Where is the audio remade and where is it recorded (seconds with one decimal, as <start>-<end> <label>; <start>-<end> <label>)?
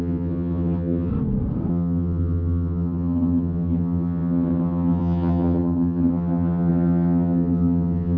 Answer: 0.0-1.1 remade; 1.1-1.7 recorded; 1.7-8.2 remade